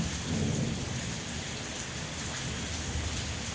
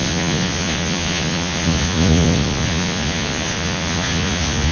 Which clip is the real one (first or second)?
first